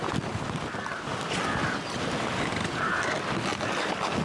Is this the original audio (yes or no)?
yes